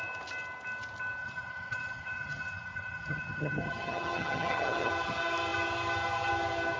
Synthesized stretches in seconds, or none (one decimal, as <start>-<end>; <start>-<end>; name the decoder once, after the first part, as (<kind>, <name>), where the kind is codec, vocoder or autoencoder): 1.2-4.9 (vocoder, HiFi-GAN)